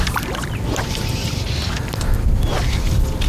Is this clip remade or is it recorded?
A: recorded